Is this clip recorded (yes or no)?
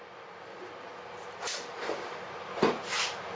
no